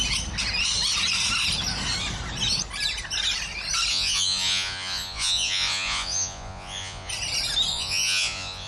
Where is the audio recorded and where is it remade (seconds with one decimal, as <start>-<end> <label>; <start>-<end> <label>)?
0.0-3.9 recorded; 3.9-7.1 remade; 7.1-7.7 recorded; 7.7-8.7 remade